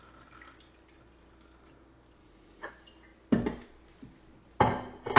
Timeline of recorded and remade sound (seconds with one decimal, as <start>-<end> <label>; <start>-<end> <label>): 0.0-2.2 recorded; 2.2-2.7 remade; 2.7-5.2 recorded